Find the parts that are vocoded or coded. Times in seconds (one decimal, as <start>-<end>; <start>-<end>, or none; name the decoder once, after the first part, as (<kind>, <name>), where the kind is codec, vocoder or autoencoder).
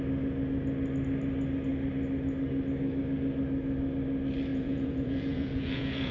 4.5-6.1 (vocoder, Vocos)